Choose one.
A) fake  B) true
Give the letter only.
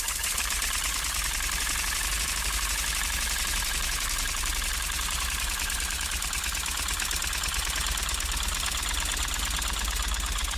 A